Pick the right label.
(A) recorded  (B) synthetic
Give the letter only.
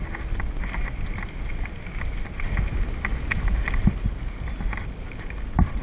A